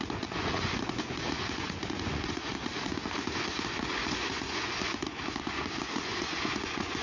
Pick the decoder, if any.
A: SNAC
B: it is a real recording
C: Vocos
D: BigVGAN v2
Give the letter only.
C